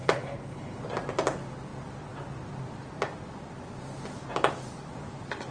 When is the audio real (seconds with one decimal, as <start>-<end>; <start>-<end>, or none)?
0.8-5.5